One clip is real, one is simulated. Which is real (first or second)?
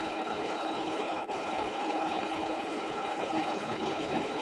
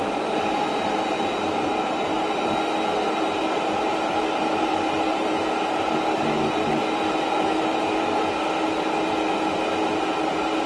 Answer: second